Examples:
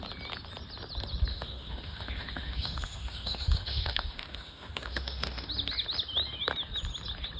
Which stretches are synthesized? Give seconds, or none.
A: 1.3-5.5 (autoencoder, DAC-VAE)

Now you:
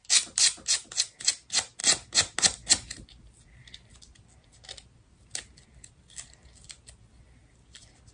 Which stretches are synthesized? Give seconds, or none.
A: none